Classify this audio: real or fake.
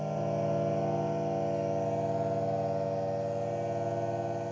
real